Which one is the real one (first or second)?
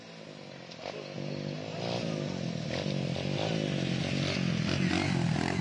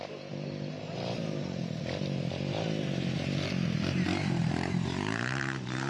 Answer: first